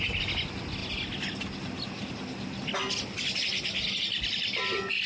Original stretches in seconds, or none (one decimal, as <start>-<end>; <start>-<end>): 0.0-5.1